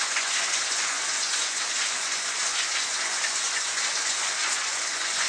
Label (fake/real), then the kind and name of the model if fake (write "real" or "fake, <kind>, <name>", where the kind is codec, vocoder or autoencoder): fake, vocoder, Vocos